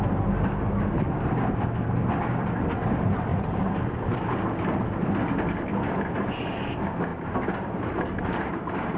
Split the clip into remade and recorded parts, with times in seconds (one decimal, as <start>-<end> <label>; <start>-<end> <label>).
0.0-3.3 recorded; 3.3-4.2 remade; 4.2-7.1 recorded; 7.1-9.0 remade

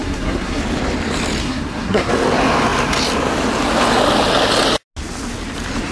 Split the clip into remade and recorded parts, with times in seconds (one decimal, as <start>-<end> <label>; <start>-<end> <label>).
0.0-0.6 remade; 0.6-1.4 recorded; 1.4-2.1 remade; 2.1-5.9 recorded

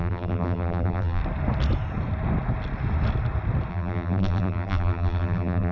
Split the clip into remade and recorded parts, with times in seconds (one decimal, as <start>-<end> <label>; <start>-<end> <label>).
0.0-1.2 remade; 1.2-3.7 recorded; 3.7-5.7 remade

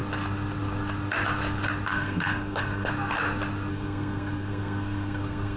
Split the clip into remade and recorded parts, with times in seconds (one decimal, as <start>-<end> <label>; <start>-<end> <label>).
0.0-1.9 recorded; 1.9-2.9 remade; 2.9-3.7 recorded; 3.7-5.6 remade

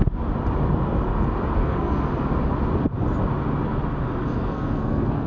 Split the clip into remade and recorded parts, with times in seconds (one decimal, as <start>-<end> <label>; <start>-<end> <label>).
0.0-1.6 recorded; 1.6-2.1 remade; 2.1-4.2 recorded; 4.2-5.3 remade

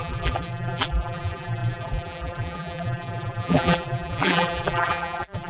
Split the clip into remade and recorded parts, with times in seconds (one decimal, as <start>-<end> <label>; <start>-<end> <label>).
0.0-5.5 remade

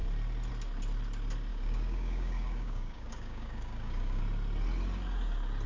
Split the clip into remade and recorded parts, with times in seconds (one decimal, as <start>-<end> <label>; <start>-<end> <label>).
0.0-1.5 recorded; 1.5-4.2 remade; 4.2-5.7 recorded

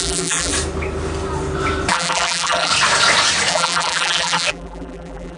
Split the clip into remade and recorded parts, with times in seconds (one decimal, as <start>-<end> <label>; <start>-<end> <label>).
0.0-0.5 remade; 0.5-1.9 recorded; 1.9-2.7 remade; 2.7-3.5 recorded; 3.5-5.4 remade